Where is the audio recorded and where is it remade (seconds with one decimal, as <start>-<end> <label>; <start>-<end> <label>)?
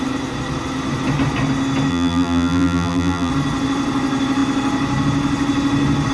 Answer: 0.0-1.9 recorded; 1.9-3.3 remade; 3.3-6.1 recorded